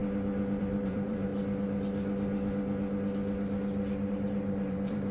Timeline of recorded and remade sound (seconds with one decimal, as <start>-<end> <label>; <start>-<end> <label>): 0.0-0.6 recorded; 0.6-1.3 remade; 1.3-4.1 recorded; 4.1-5.1 remade